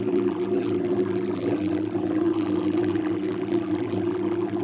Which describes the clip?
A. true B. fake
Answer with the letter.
B